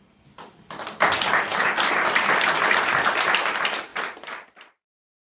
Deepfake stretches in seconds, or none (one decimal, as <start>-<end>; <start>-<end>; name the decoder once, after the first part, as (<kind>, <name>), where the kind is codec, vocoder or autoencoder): none